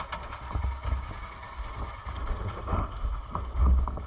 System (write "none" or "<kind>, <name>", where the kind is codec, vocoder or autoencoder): none